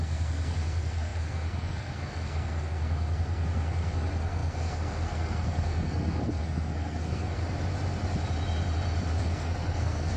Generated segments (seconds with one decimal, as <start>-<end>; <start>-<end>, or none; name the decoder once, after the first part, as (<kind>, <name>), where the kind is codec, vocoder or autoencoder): 0.0-7.4 (codec, SNAC); 9.2-10.2